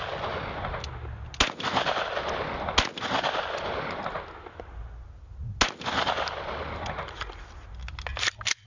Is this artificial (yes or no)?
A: no